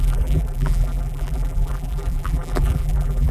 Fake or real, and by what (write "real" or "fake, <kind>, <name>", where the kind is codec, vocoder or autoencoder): fake, vocoder, BigVGAN v2